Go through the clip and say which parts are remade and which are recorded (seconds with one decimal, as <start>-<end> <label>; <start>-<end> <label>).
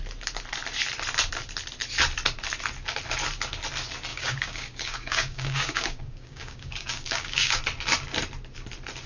0.0-4.1 recorded; 4.1-7.6 remade; 7.6-9.1 recorded